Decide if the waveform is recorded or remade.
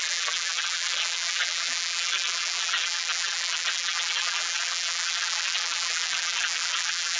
remade